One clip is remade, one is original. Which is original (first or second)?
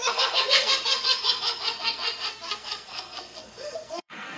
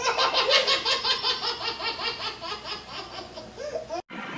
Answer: second